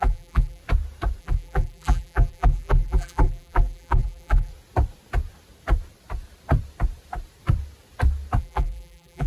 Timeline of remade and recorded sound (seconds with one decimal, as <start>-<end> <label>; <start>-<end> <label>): 0.0-0.6 remade; 0.6-1.2 recorded; 1.2-4.5 remade; 4.5-8.4 recorded; 8.4-9.3 remade